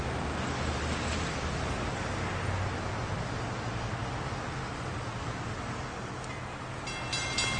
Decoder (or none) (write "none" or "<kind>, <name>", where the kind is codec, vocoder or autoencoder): none